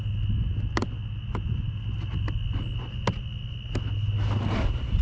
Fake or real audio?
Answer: real